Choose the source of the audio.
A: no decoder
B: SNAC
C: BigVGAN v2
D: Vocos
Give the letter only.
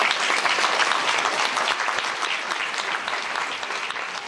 A